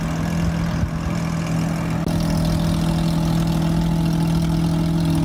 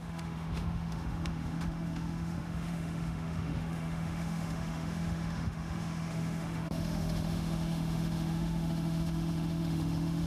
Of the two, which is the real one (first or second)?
first